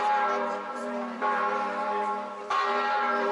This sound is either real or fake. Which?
fake